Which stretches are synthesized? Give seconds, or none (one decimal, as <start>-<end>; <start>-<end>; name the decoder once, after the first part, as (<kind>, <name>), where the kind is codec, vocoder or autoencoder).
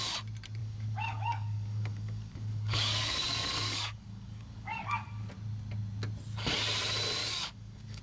0.6-5.3 (codec, DAC); 7.2-8.0